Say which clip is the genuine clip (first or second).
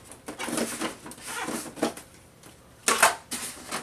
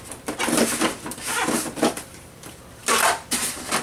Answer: first